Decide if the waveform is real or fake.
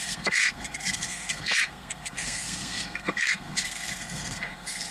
fake